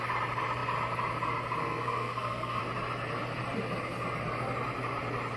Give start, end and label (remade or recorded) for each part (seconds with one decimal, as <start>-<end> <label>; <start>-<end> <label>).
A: 0.0-1.6 recorded; 1.6-2.6 remade; 2.6-5.4 recorded